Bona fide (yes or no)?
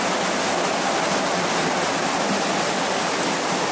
yes